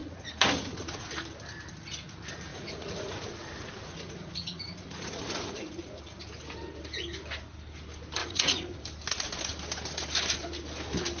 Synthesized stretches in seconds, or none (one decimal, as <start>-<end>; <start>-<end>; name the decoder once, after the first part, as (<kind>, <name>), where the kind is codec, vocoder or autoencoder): 0.0-1.1 (vocoder, Vocos); 2.5-6.0; 8.2-8.8